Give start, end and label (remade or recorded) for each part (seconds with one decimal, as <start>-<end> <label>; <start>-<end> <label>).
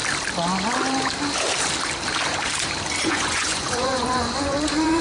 0.0-3.0 recorded; 3.0-5.0 remade